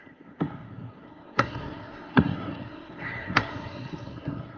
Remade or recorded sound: remade